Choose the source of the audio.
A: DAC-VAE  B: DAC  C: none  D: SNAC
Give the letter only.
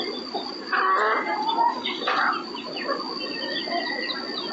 C